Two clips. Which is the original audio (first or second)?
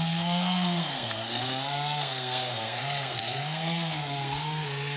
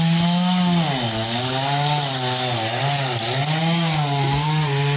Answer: second